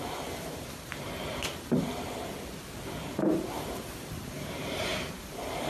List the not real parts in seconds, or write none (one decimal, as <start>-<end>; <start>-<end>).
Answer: 0.0-0.9; 4.1-5.7